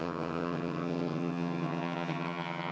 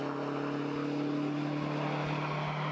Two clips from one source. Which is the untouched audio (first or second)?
second